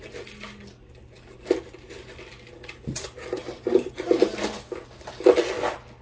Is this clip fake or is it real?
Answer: real